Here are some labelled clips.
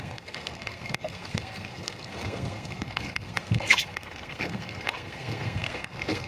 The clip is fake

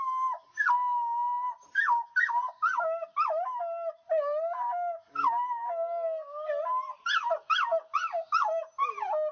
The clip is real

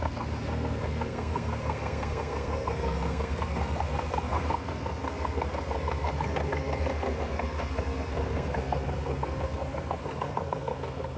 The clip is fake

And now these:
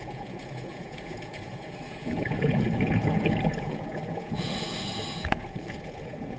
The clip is fake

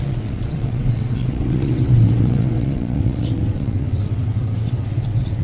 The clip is fake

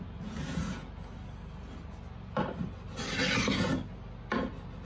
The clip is real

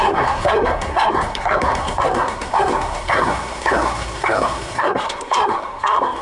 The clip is fake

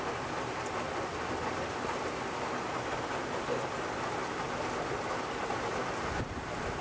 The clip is real